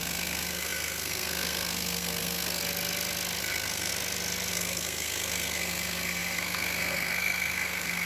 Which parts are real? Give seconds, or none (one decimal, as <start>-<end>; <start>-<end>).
2.6-3.4; 3.9-4.5